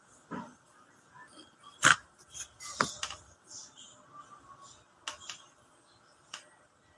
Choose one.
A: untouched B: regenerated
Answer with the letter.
A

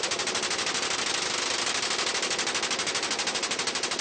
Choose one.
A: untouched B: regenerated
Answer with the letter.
A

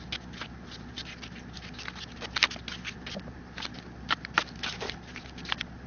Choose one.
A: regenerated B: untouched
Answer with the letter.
B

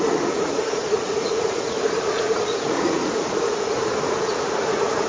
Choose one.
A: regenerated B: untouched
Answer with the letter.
A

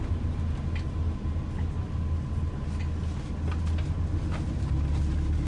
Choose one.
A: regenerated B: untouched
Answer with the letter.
B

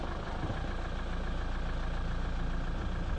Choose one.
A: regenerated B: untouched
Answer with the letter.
B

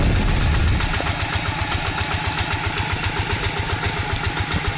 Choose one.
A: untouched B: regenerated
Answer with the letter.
A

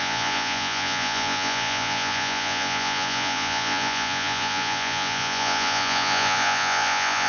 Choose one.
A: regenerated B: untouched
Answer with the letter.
A